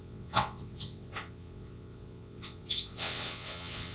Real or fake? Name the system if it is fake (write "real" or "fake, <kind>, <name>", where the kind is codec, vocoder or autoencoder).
fake, vocoder, WaveNeXt